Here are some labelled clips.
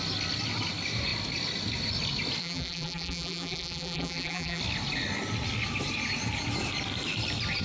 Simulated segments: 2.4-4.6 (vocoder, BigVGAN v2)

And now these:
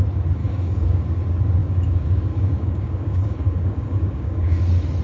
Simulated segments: 0.4-1.0 (codec, DAC); 1.6-4.6

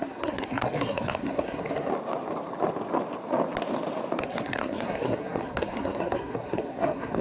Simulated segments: 0.0-1.9 (codec, SNAC); 4.2-7.2

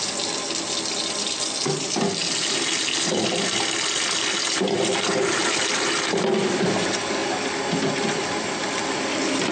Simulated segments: none

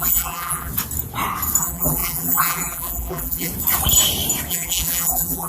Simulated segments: 0.0-0.7 (vocoder, BigVGAN v2); 1.6-3.5; 4.5-5.5

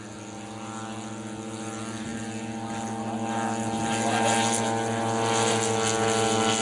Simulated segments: none

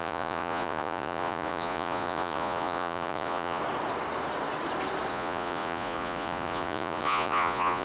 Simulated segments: 0.0-3.6 (vocoder, Vocos); 5.1-7.8